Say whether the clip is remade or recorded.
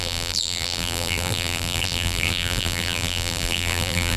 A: remade